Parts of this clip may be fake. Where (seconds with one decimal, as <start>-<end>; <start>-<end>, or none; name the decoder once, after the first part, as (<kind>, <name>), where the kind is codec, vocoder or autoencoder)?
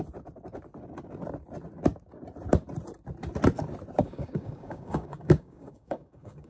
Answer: 4.0-6.5 (codec, DAC)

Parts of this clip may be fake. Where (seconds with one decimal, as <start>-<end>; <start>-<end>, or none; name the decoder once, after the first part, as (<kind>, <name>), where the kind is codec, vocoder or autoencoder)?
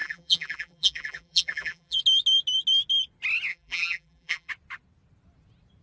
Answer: 0.0-2.0 (vocoder, BigVGAN v2); 3.5-4.5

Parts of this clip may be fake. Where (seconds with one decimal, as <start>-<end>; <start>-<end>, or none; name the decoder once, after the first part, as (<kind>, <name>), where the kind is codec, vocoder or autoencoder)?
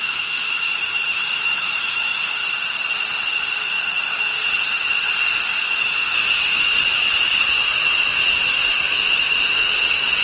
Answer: 0.0-2.4 (autoencoder, DAC-VAE); 3.6-4.4; 5.8-6.8; 7.5-10.2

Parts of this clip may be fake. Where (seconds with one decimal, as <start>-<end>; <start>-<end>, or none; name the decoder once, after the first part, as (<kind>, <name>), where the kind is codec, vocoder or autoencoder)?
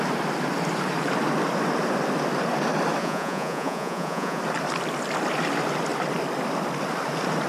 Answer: 3.0-4.4 (vocoder, Vocos)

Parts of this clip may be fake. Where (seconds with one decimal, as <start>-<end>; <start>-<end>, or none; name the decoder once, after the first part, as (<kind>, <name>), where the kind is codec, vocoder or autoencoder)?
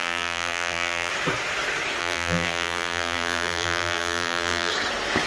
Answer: 0.0-1.1 (vocoder, BigVGAN v2); 2.0-4.7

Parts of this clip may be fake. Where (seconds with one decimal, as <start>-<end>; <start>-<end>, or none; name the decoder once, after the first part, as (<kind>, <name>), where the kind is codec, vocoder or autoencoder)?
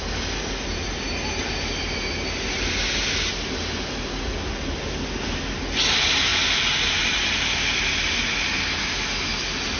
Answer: none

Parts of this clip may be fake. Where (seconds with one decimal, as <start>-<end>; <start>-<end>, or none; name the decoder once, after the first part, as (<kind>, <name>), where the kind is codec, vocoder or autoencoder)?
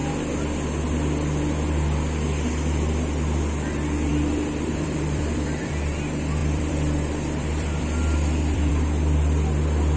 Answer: 4.1-5.7 (vocoder, BigVGAN v2); 6.4-8.7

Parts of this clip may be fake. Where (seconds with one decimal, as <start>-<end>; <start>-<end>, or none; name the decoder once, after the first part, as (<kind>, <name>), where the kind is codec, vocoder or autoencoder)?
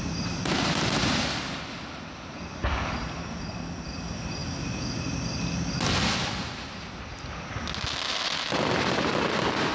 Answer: none